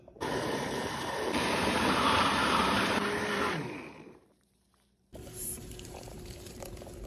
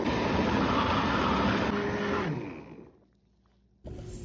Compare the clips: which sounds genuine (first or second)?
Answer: second